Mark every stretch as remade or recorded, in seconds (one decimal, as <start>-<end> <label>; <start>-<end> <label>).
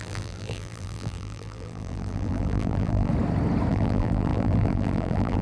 0.0-3.1 remade; 3.1-3.7 recorded; 3.7-5.4 remade